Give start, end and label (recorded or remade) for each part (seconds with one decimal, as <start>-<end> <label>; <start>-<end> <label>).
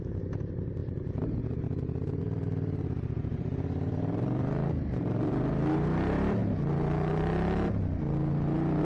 0.0-0.8 remade; 0.8-2.2 recorded; 2.2-6.4 remade; 6.4-8.8 recorded